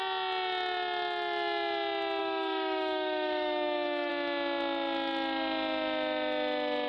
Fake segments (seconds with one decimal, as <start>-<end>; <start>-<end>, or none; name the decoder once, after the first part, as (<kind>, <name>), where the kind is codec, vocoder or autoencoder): 2.2-4.1 (autoencoder, DAC-VAE)

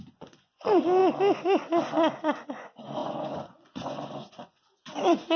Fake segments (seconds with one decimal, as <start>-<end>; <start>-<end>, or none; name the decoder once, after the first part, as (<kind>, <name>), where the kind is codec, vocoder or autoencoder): 0.0-1.0 (vocoder, Vocos); 2.6-5.4